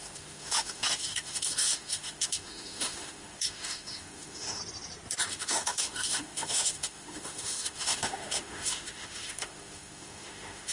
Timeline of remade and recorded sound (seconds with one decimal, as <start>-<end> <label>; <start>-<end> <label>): 0.0-4.6 remade; 4.6-5.3 recorded; 5.3-10.7 remade